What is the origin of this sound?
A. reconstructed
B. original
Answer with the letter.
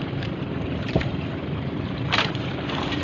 A